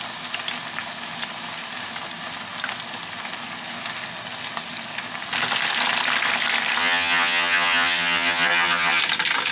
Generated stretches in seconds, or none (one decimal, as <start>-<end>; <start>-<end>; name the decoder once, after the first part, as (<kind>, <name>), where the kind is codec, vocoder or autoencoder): 6.8-9.0 (vocoder, HiFi-GAN)